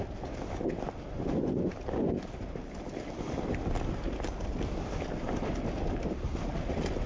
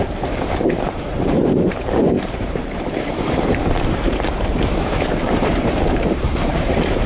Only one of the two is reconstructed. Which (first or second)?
second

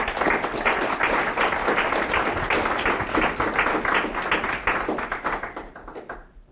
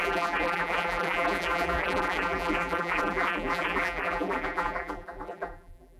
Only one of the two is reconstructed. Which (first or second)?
second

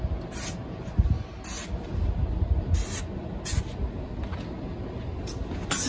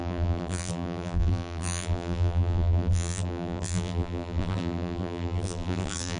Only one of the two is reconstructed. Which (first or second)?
second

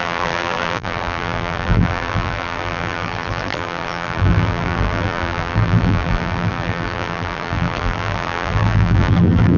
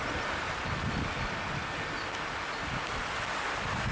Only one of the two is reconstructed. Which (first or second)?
first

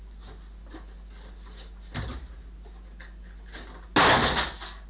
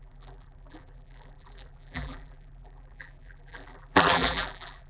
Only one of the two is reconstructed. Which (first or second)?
second